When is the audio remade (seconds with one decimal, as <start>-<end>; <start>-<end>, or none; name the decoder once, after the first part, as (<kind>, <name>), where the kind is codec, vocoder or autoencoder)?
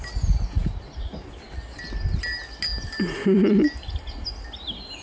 none